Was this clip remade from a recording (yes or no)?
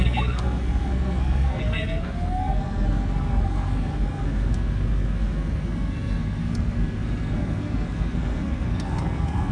yes